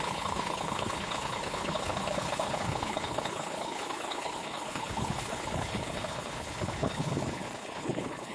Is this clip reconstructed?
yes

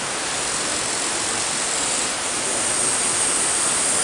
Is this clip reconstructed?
no